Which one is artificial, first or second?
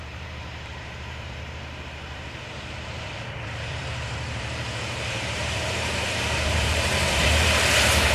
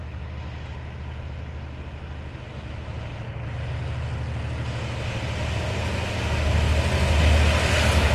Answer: first